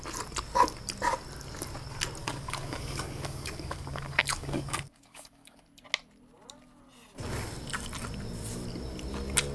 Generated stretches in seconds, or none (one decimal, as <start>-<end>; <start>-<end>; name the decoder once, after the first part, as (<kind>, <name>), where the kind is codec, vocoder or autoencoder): 2.2-5.6 (codec, DAC)